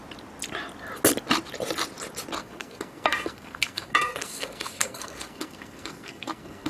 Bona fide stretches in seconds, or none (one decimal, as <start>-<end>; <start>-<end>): 0.0-2.4